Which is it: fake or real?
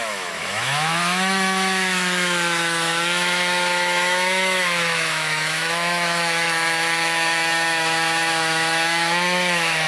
fake